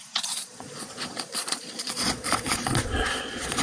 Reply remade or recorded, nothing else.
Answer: remade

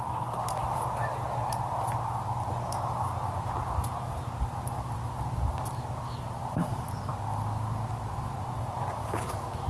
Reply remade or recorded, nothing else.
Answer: recorded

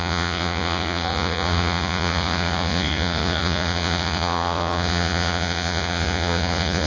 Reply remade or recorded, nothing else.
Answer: remade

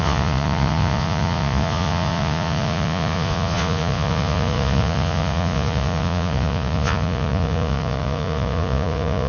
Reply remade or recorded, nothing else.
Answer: remade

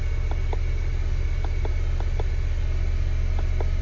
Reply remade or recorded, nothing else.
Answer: recorded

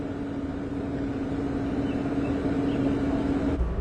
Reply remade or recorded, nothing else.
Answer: recorded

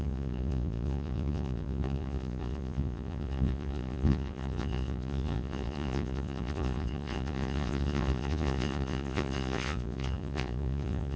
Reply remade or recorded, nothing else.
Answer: remade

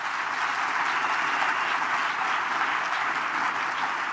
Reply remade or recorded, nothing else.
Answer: recorded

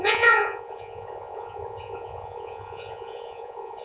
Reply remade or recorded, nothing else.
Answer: remade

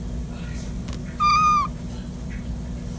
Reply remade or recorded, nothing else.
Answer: recorded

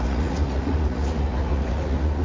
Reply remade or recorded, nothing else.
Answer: remade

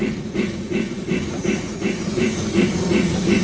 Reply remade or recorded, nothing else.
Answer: remade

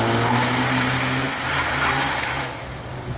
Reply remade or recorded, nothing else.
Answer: recorded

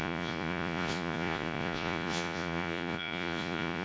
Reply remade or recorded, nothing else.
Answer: remade